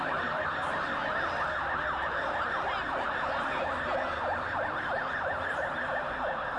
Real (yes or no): yes